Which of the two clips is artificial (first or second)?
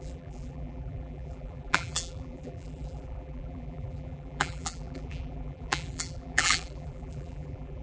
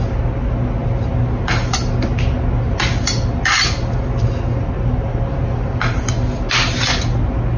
first